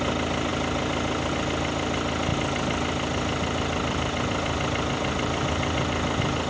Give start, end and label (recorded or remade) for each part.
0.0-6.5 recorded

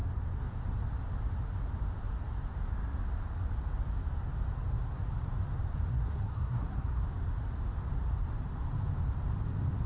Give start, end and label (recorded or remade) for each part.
0.0-5.9 recorded; 5.9-7.0 remade; 7.0-9.9 recorded